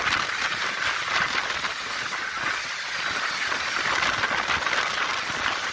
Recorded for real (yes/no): yes